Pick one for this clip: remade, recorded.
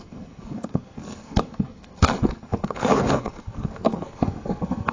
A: remade